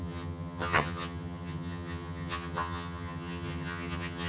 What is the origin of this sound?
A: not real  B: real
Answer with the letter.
A